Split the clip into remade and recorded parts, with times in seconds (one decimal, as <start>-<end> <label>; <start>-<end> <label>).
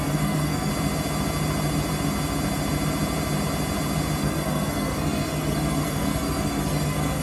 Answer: 0.0-0.7 remade; 0.7-4.2 recorded; 4.2-7.2 remade